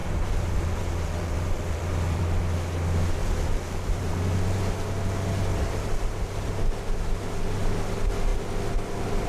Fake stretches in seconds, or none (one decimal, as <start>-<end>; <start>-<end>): 0.0-2.2; 3.2-4.1; 5.5-6.5